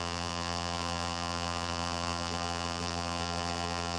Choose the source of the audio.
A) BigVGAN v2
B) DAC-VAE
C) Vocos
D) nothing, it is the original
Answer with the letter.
A